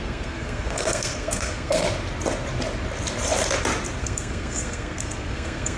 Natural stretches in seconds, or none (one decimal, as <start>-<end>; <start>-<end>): 1.8-4.0